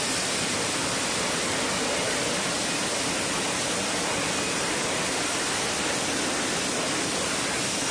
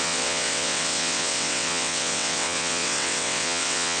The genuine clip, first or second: first